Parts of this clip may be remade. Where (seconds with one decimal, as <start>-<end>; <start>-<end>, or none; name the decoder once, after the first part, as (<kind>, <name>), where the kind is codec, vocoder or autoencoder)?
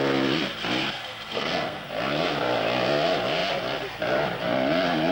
0.8-1.9 (codec, SNAC)